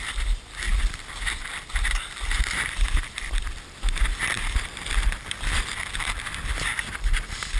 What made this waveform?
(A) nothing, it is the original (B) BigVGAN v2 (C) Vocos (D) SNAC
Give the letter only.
A